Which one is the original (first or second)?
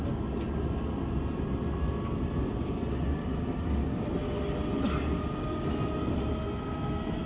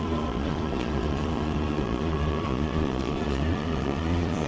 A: first